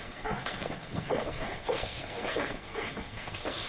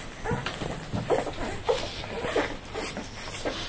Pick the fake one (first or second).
first